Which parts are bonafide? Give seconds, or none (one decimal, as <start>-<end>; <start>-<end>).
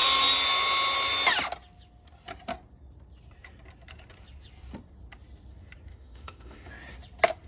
0.0-5.9; 6.7-7.5